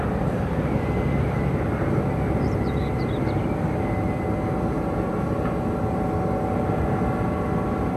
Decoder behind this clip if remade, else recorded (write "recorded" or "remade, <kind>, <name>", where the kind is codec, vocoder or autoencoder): recorded